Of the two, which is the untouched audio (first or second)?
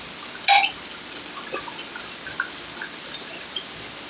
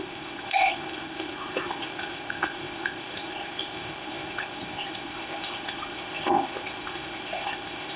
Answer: first